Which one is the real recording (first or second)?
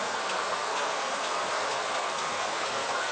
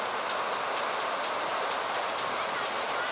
second